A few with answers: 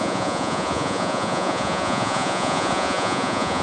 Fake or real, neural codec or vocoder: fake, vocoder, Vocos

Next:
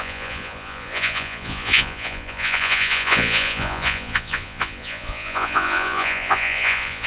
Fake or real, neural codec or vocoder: fake, vocoder, Vocos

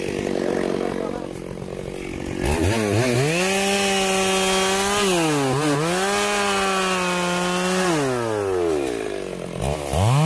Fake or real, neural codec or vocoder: real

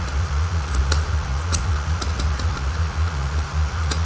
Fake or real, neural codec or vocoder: fake, vocoder, Vocos